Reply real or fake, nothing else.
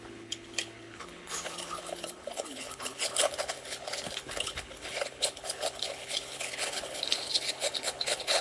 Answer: fake